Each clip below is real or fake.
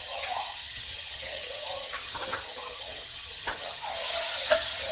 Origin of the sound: fake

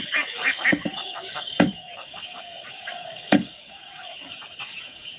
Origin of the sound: fake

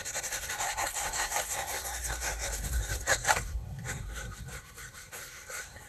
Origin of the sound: fake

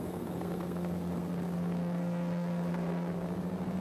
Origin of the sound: fake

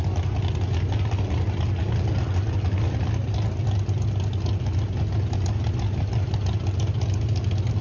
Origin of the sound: real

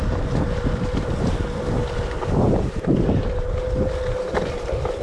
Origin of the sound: real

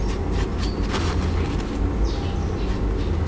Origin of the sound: real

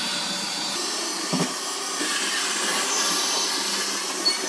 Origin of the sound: fake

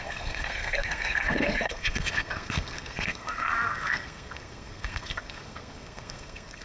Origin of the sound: fake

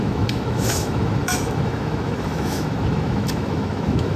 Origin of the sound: fake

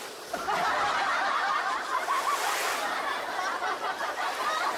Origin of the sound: real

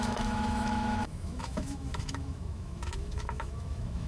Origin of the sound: fake